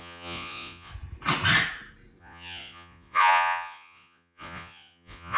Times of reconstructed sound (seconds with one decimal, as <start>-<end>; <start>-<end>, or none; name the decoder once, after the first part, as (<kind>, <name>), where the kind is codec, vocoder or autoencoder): 0.0-0.9 (vocoder, Vocos); 2.2-5.4